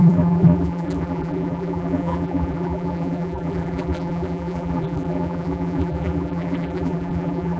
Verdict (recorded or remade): remade